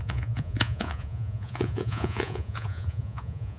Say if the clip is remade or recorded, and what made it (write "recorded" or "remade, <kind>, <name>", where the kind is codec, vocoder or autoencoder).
remade, vocoder, Vocos